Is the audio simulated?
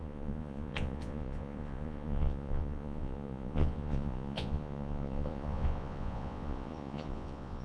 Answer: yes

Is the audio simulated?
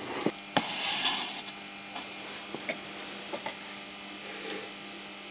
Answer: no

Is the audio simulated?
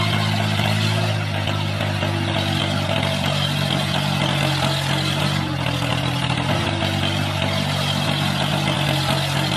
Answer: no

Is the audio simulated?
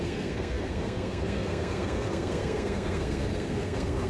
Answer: yes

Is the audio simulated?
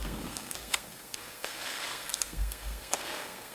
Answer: yes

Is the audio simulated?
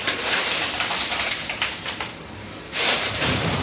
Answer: yes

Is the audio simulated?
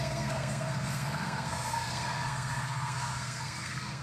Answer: yes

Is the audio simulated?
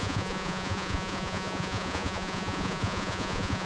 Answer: yes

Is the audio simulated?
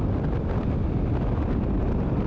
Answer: no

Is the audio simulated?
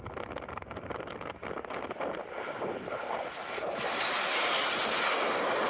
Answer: no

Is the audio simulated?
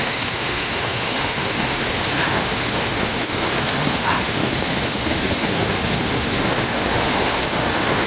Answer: yes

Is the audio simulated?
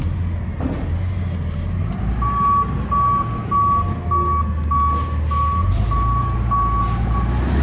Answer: no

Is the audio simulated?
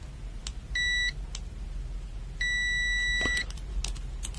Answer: no